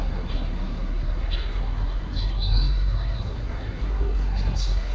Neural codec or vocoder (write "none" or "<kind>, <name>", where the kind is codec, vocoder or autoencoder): codec, SNAC